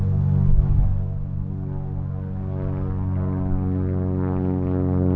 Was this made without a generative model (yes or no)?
yes